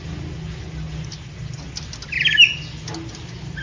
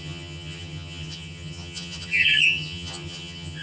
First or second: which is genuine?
first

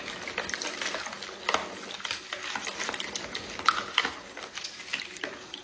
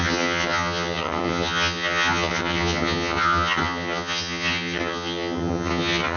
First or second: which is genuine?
first